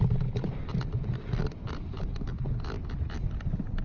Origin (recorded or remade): recorded